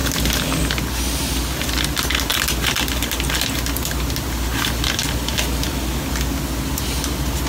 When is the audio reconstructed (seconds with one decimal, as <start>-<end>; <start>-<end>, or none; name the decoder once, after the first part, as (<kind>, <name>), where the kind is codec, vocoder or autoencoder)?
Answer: 0.0-0.6 (vocoder, BigVGAN v2)